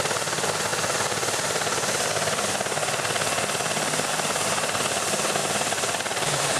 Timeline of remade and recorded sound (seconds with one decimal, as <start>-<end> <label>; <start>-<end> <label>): 0.0-6.6 recorded